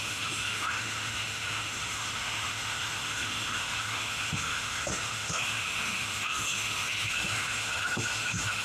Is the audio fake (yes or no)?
yes